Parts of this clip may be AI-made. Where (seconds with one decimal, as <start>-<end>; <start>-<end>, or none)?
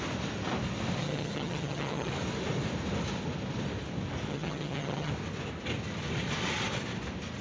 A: 1.0-2.1; 4.3-5.1